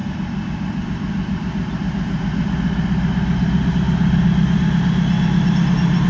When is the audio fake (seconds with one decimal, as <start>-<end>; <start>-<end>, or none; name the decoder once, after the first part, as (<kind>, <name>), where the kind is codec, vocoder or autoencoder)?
none